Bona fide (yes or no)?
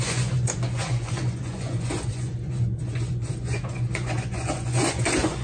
no